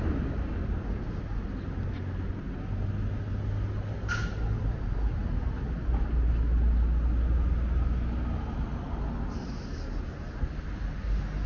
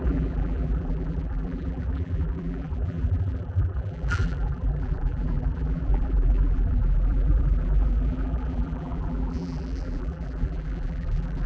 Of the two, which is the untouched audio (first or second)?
first